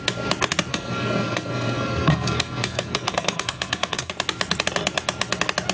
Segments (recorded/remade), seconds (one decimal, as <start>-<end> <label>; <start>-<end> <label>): 0.0-0.7 recorded; 0.7-4.1 remade; 4.1-5.7 recorded